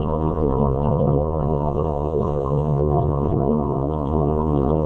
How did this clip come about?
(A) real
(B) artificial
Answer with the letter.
B